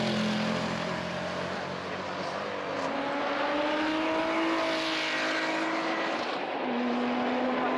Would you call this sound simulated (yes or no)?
no